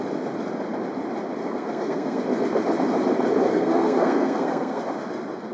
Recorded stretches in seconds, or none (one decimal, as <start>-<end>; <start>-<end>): 0.0-1.4; 2.2-3.5; 4.8-5.5